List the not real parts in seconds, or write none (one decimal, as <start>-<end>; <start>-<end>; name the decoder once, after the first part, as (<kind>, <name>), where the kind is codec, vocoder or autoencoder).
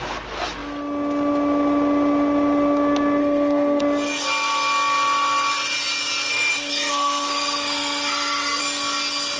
3.2-3.8 (codec, SNAC); 6.3-8.6